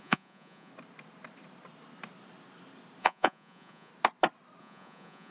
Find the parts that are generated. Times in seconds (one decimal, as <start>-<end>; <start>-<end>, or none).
0.0-0.7; 3.0-3.9; 4.6-5.3